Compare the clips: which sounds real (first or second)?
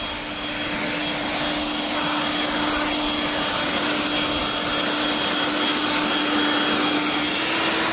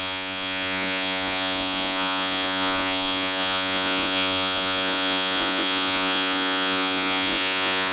first